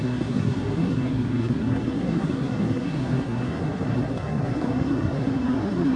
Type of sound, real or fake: fake